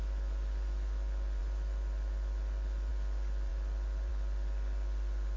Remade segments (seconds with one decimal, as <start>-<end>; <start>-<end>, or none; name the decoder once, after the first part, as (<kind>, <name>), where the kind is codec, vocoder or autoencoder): none